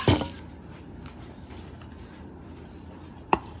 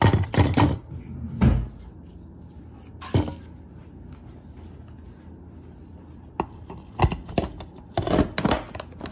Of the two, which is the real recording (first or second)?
second